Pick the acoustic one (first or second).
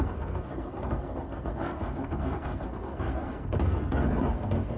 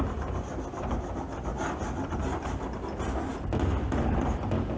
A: second